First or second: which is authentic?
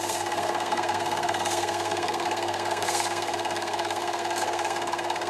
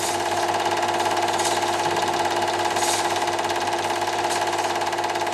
second